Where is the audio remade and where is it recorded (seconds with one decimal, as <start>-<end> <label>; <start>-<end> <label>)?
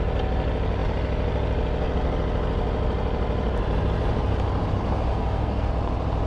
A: 0.0-5.1 recorded; 5.1-5.7 remade; 5.7-6.3 recorded